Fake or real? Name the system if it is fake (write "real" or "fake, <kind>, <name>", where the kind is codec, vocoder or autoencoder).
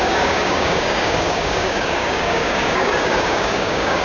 fake, codec, DAC